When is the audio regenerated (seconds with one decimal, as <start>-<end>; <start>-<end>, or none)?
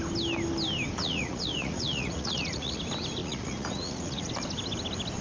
1.0-2.8; 3.2-4.3